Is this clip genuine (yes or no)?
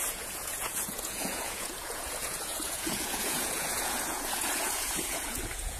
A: no